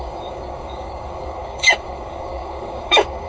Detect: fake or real fake